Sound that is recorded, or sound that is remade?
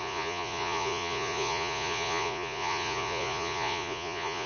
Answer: remade